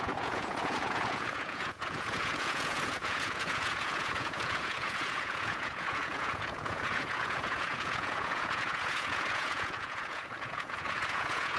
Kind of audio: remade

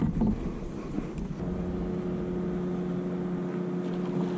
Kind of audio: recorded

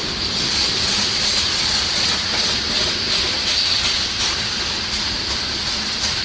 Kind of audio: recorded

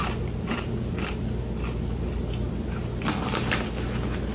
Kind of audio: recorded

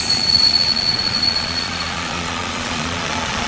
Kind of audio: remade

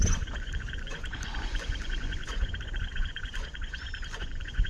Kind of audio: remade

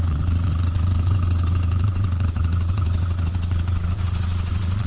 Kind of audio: remade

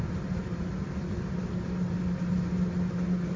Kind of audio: recorded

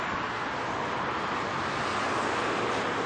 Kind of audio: recorded